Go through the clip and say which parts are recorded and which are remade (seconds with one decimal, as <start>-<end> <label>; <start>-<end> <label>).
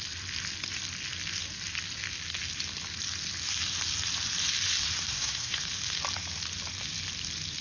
0.0-5.1 recorded; 5.1-5.6 remade; 5.6-7.6 recorded